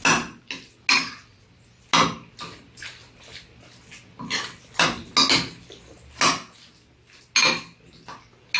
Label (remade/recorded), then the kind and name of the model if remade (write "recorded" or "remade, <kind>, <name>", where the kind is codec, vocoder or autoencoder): recorded